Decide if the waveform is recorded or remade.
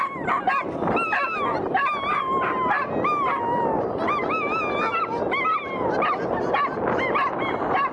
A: recorded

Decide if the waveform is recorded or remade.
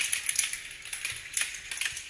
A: recorded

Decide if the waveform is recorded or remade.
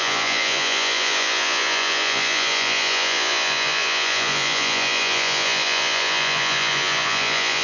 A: remade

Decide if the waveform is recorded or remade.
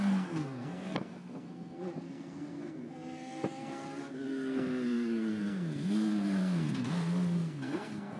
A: remade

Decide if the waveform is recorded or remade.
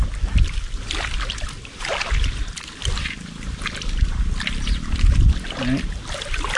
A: remade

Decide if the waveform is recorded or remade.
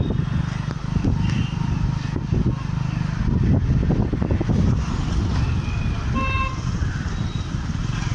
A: recorded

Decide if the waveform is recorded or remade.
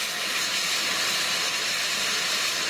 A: recorded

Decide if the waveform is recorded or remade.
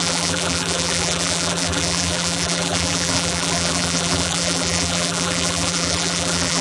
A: remade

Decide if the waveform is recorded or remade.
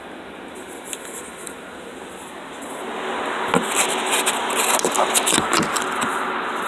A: recorded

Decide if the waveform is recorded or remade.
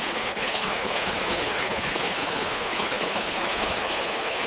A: remade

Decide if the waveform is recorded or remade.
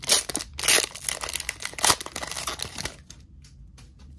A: recorded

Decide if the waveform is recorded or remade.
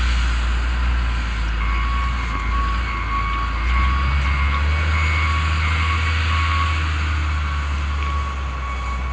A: recorded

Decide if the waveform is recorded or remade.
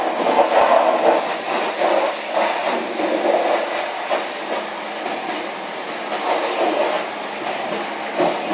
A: recorded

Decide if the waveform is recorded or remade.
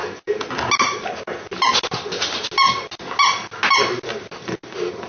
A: recorded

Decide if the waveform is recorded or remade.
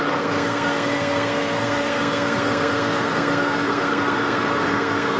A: remade